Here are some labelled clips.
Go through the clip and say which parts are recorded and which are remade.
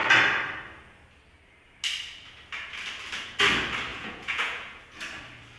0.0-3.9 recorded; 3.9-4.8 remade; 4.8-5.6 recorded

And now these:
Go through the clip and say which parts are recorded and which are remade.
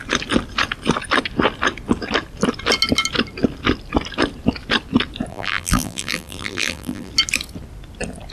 0.0-5.3 recorded; 5.3-7.1 remade; 7.1-8.3 recorded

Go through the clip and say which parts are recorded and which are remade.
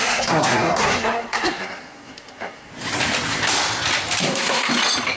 0.0-2.7 remade; 2.7-4.2 recorded; 4.2-4.7 remade; 4.7-5.2 recorded